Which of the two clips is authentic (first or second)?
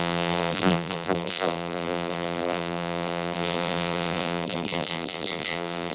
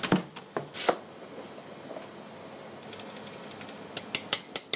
second